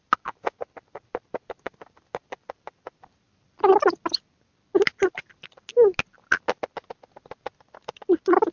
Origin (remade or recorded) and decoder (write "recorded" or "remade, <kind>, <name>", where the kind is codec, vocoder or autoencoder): recorded